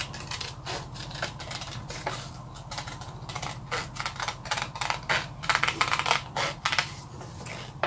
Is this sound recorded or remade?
recorded